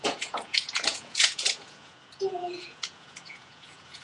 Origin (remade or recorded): remade